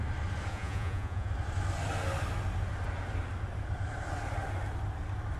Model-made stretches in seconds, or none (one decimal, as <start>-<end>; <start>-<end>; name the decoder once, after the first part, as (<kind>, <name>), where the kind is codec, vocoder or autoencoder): 0.5-1.3 (vocoder, Vocos)